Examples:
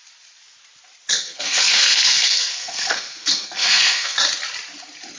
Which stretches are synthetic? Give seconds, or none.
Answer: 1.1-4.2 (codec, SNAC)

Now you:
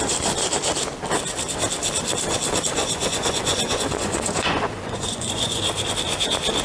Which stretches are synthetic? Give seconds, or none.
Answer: 2.8-5.6 (vocoder, Vocos)

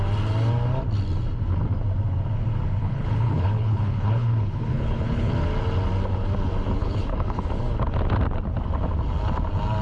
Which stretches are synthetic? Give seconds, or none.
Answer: 2.8-5.3 (codec, HILCodec); 6.8-7.4